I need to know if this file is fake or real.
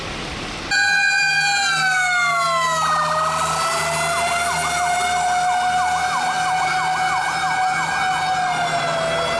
real